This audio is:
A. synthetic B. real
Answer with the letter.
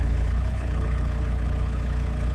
A